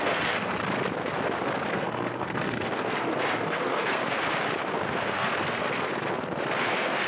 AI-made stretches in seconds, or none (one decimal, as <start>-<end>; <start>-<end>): 0.0-0.6; 1.6-4.0; 4.9-5.9; 6.6-7.1